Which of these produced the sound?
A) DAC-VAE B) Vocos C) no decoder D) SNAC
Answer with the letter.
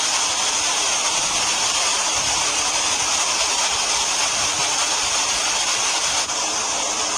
C